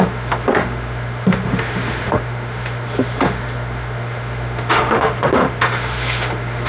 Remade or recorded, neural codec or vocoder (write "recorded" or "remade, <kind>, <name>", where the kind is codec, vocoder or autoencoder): remade, autoencoder, DAC-VAE